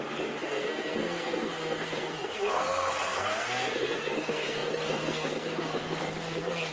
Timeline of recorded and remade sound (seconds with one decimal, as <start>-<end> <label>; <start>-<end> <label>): 0.0-6.7 remade